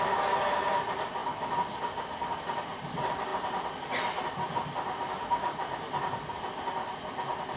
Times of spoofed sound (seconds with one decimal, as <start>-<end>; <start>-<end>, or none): 1.2-2.4